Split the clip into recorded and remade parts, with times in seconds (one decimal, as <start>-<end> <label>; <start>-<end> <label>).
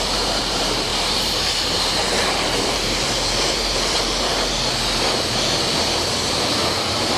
0.0-4.3 remade; 4.3-6.7 recorded; 6.7-7.2 remade